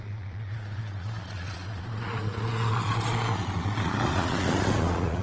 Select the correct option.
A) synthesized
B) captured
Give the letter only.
A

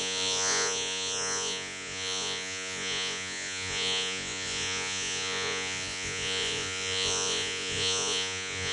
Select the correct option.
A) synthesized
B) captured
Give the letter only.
A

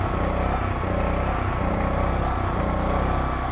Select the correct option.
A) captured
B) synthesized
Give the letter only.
A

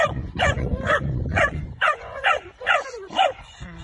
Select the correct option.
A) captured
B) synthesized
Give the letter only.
B